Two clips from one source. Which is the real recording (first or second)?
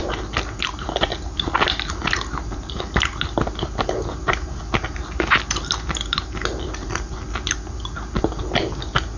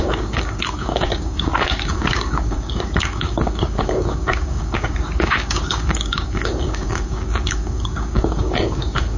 first